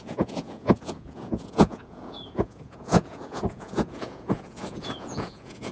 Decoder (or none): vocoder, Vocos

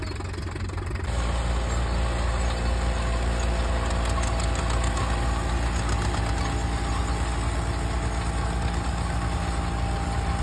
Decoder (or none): none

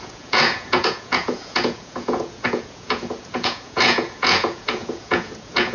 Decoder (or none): vocoder, Vocos